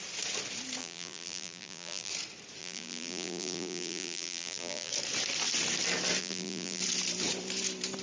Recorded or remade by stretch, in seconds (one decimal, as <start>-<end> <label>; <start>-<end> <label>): 0.0-0.8 recorded; 0.8-2.1 remade; 2.1-2.6 recorded; 2.6-4.9 remade; 4.9-6.2 recorded; 6.2-6.8 remade; 6.8-8.0 recorded